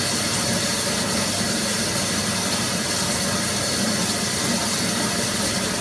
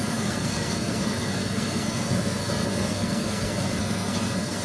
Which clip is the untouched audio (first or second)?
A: first